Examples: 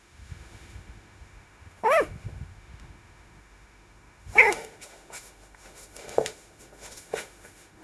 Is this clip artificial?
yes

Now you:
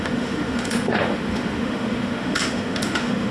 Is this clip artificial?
yes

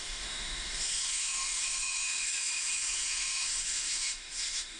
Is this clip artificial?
yes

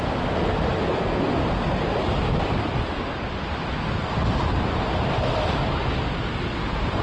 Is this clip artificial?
no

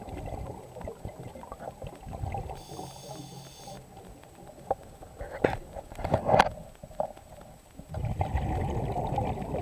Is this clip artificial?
no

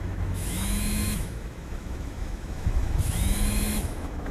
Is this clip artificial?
yes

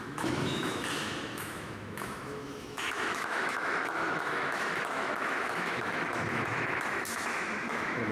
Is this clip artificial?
yes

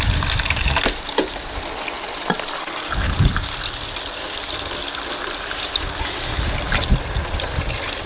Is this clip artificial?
no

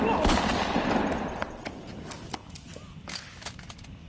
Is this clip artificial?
no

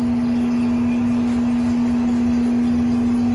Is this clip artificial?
no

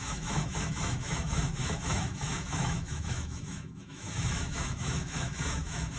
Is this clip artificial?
yes